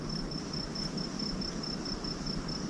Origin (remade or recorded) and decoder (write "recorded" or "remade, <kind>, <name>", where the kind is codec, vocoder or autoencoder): recorded